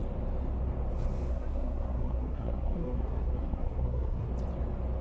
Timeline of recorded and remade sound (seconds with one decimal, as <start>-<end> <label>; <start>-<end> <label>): 0.0-1.3 recorded; 1.3-4.3 remade; 4.3-5.0 recorded